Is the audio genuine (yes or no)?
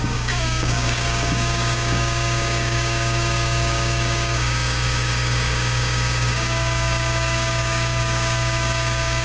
no